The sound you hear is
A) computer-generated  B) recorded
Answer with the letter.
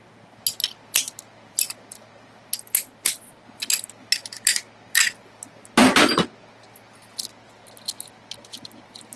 B